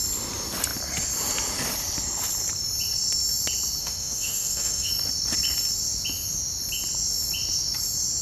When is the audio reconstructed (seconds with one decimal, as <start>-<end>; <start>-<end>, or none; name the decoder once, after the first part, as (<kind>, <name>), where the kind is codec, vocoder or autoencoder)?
3.8-4.9 (autoencoder, DAC-VAE)